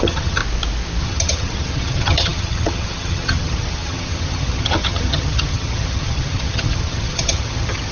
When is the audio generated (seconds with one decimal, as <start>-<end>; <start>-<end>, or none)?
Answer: 0.0-0.4; 1.0-7.9